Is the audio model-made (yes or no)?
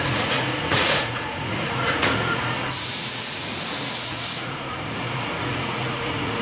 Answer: yes